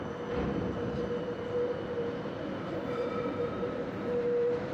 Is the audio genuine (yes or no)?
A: no